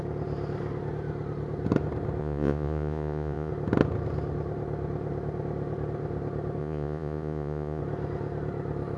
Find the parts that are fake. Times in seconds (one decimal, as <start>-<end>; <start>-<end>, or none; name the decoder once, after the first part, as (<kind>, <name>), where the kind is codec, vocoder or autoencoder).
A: 2.2-3.5 (vocoder, Vocos); 6.6-7.8